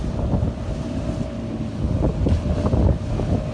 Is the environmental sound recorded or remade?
recorded